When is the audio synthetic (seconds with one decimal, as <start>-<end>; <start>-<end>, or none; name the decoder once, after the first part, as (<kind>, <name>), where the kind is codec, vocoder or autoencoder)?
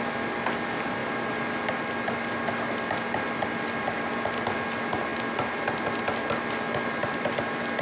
0.0-1.0 (vocoder, BigVGAN v2); 3.7-5.1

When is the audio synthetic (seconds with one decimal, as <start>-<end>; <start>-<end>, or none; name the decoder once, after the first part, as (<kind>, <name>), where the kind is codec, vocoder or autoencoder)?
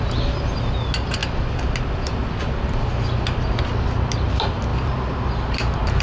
none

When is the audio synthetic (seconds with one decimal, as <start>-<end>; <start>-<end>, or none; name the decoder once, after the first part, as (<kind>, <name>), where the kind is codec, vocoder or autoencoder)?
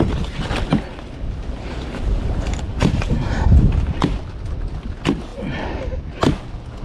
0.9-4.2 (vocoder, BigVGAN v2)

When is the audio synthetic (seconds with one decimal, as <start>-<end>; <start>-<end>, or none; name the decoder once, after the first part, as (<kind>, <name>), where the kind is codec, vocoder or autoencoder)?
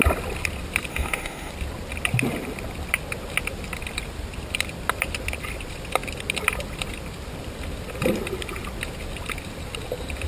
0.9-1.5 (autoencoder, DAC-VAE)